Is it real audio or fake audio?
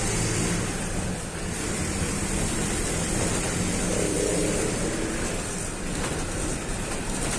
real